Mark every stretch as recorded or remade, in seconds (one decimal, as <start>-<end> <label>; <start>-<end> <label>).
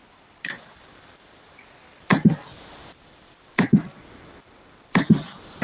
0.0-5.6 remade